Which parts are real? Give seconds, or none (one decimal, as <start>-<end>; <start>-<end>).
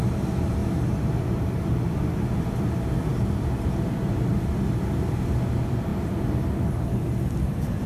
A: 0.0-7.9